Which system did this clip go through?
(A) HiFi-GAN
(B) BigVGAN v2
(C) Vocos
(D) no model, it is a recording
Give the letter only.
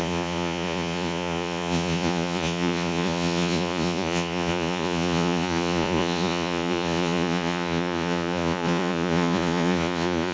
C